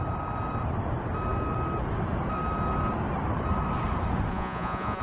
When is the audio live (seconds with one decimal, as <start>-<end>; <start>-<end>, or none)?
0.0-4.3